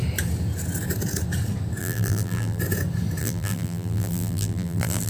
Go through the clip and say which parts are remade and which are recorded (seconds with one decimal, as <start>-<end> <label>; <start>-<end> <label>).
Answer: 0.0-1.8 recorded; 1.8-2.6 remade; 2.6-3.2 recorded; 3.2-5.1 remade